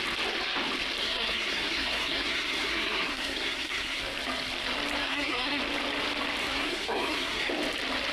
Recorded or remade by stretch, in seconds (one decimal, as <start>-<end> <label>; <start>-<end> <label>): 0.0-1.0 recorded; 1.0-4.0 remade; 4.0-5.0 recorded; 5.0-5.6 remade; 5.6-6.4 recorded; 6.4-7.5 remade; 7.5-8.1 recorded